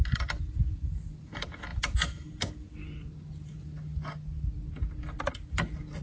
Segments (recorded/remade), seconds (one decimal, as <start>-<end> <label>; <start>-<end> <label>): 0.0-6.0 recorded